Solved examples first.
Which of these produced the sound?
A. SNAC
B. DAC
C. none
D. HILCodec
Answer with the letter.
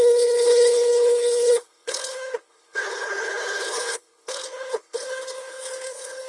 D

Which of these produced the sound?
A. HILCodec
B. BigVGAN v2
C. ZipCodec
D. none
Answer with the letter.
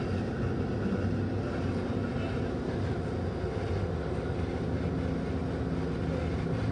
D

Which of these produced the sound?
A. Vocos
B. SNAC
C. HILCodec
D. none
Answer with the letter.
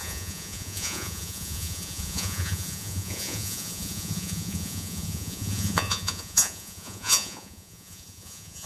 A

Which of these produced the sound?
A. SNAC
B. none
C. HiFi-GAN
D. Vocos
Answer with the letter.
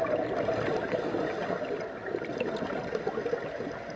B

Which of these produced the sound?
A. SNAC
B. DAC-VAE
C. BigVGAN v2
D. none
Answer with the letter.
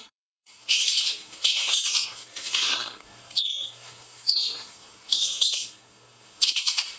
A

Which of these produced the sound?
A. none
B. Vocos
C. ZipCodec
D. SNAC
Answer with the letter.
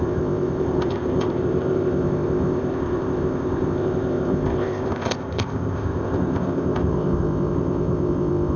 C